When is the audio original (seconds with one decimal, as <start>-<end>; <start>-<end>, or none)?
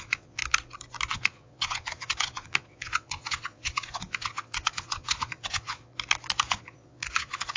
0.4-1.1; 5.9-6.5